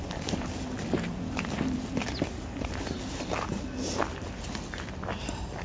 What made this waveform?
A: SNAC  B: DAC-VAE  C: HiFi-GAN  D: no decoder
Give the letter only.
D